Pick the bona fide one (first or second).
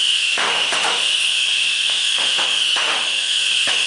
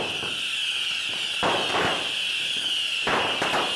second